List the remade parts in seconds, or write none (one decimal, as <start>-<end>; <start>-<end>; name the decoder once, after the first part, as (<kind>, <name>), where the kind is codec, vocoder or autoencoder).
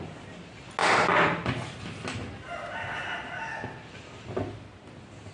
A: none